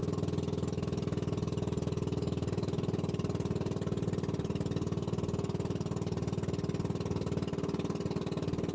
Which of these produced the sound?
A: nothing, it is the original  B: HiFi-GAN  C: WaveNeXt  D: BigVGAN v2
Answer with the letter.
A